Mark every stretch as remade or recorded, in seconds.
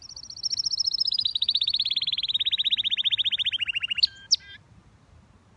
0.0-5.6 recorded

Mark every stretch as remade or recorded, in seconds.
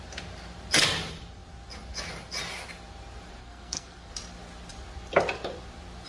0.0-3.4 recorded; 3.4-4.1 remade; 4.1-6.1 recorded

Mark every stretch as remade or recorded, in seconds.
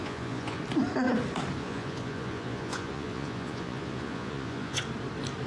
0.0-0.6 remade; 0.6-1.6 recorded; 1.6-4.8 remade; 4.8-5.5 recorded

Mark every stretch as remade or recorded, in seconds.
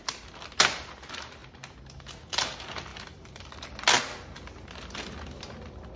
0.0-2.9 recorded; 2.9-3.5 remade; 3.5-6.0 recorded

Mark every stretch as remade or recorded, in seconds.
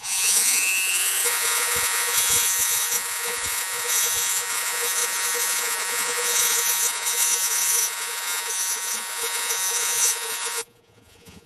0.0-11.5 remade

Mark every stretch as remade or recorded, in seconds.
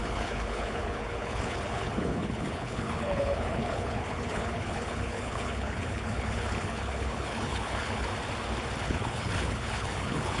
0.0-8.1 remade; 8.1-8.8 recorded; 8.8-10.4 remade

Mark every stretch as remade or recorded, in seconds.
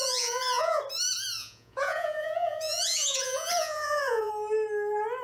0.0-0.8 remade; 0.8-1.4 recorded; 1.4-4.3 remade; 4.3-5.2 recorded